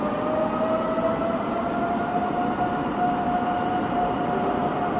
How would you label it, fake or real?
real